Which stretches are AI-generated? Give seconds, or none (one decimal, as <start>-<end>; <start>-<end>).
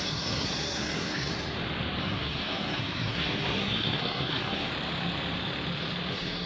0.0-1.3; 2.0-4.7; 6.1-6.5